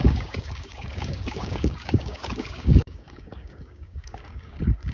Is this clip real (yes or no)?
no